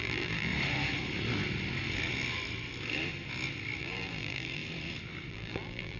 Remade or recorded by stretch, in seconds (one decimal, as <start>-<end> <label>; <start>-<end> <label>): 0.0-0.5 remade; 0.5-3.8 recorded; 3.8-4.6 remade; 4.6-5.3 recorded; 5.3-6.0 remade